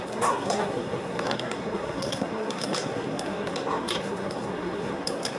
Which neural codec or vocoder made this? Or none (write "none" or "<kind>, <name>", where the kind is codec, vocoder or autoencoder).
codec, SNAC